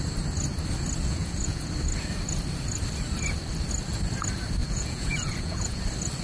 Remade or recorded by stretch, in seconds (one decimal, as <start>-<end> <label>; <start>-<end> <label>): 0.0-1.1 recorded; 1.1-1.7 remade; 1.7-4.6 recorded; 4.6-5.8 remade; 5.8-6.2 recorded